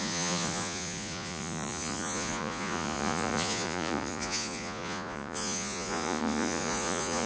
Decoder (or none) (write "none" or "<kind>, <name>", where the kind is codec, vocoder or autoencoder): vocoder, Vocos